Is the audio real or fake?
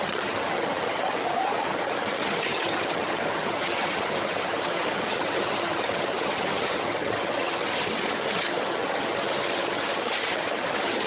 fake